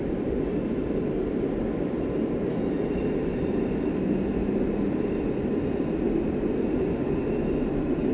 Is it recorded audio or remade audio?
recorded